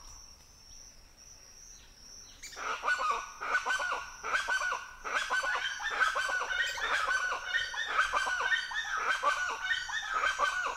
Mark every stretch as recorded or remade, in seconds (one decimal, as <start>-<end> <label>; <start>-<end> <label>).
0.0-10.8 recorded